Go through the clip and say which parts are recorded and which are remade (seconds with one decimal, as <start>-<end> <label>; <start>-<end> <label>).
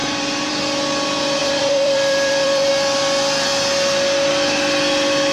0.0-0.5 remade; 0.5-1.4 recorded; 1.4-2.7 remade; 2.7-5.3 recorded